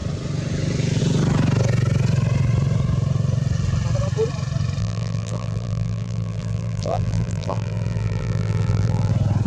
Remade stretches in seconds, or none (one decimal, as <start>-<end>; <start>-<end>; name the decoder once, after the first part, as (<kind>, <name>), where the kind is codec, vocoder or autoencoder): 4.8-9.1 (vocoder, BigVGAN v2)